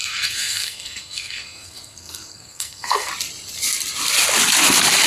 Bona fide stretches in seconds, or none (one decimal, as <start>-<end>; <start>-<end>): 3.1-5.1